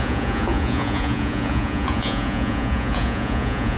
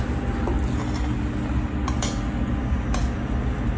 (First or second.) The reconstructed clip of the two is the first